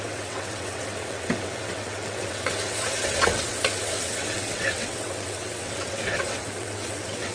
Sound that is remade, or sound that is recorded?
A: remade